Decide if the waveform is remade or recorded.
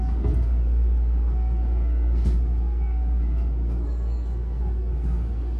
remade